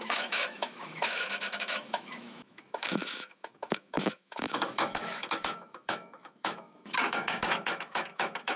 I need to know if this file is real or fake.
fake